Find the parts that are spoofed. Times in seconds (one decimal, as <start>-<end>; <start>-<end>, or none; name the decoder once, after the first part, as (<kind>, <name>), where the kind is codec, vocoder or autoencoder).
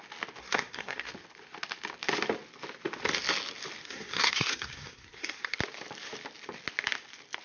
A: 0.4-1.1 (codec, SNAC); 3.8-5.6